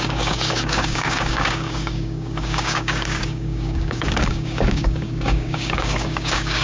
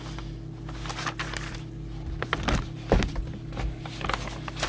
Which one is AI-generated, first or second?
first